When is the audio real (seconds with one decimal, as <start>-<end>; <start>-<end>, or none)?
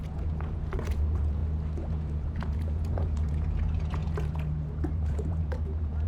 1.4-1.9